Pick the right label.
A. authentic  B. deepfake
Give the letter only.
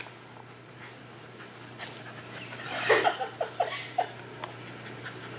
A